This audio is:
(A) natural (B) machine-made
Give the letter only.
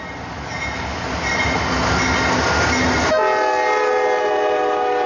A